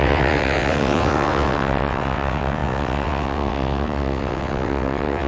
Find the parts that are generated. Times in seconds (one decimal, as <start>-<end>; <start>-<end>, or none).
0.0-5.3